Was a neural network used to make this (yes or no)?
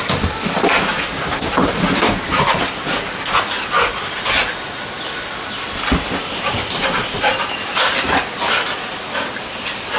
no